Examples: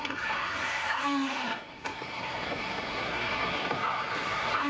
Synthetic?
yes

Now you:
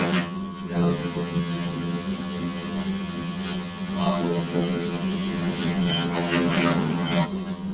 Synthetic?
yes